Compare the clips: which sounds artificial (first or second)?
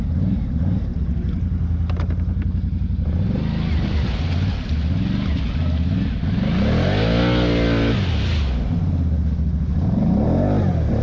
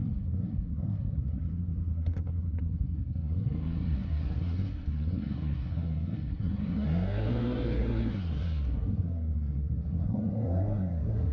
second